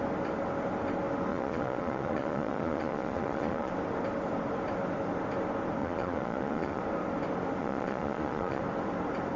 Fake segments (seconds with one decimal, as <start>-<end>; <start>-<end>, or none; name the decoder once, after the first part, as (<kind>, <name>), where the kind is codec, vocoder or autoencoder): 1.3-3.7 (vocoder, Vocos); 5.8-6.8; 7.6-8.6